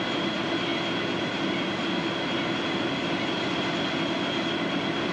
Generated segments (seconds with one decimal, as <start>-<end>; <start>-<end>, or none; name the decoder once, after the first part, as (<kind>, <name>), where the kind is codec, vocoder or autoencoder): none